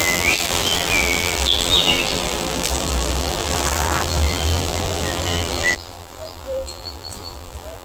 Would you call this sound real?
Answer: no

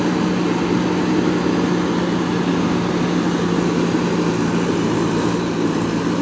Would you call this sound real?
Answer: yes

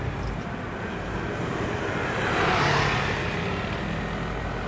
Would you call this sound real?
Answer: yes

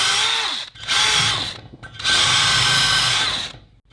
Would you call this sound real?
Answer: yes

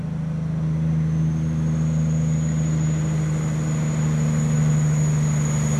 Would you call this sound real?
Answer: yes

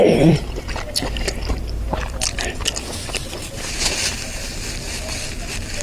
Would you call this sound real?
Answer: no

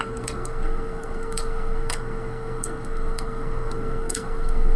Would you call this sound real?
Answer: no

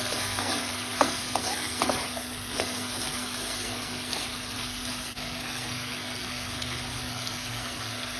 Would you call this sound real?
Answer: no